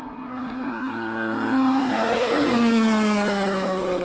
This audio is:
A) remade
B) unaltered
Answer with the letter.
A